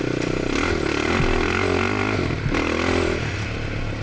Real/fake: real